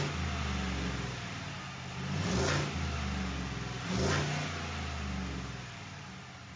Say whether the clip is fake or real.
real